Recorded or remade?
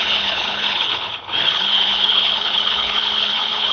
remade